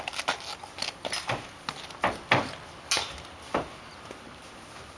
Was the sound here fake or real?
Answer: real